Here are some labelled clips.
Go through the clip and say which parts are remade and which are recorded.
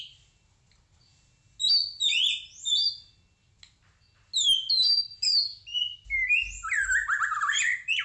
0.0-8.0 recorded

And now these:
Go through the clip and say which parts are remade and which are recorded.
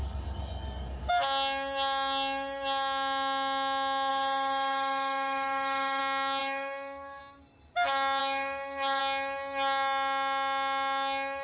0.0-1.1 remade; 1.1-4.1 recorded; 4.1-6.0 remade; 6.0-6.4 recorded; 6.4-7.2 remade; 7.2-8.2 recorded; 8.2-9.0 remade; 9.0-11.4 recorded